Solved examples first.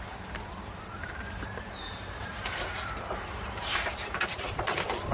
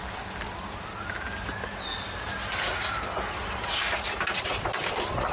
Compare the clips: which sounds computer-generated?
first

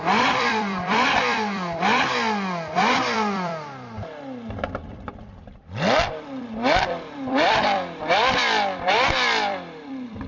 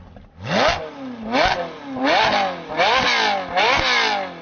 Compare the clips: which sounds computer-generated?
first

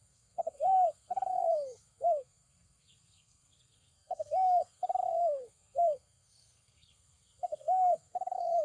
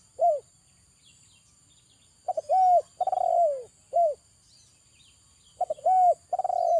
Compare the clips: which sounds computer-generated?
first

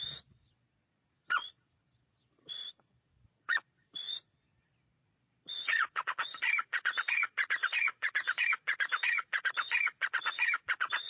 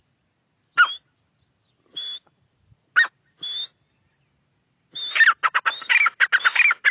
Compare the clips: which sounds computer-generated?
first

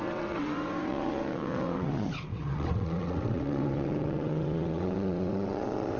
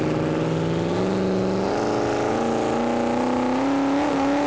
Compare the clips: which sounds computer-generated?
first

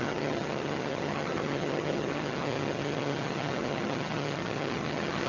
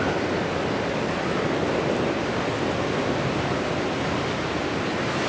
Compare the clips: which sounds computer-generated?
first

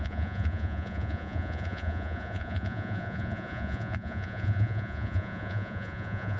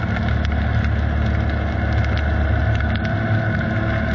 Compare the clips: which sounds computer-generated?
first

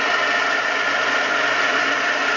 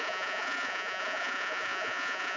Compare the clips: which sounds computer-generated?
second